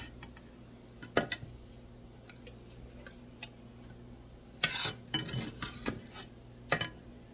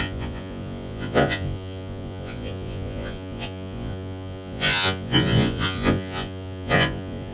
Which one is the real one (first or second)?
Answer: first